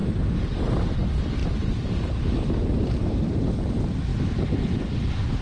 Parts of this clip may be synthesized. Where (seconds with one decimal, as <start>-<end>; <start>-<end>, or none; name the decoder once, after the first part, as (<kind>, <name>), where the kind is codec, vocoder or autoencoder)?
0.0-0.6 (vocoder, BigVGAN v2); 1.4-3.4